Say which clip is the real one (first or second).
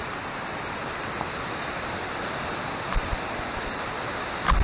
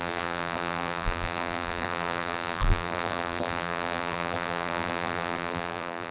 first